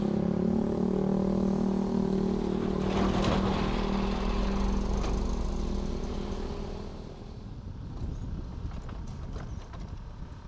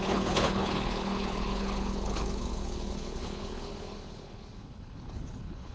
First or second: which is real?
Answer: first